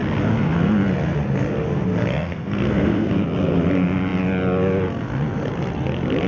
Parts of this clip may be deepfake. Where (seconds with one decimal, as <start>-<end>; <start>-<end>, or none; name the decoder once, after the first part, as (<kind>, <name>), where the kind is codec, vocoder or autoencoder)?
2.1-3.1 (codec, SNAC)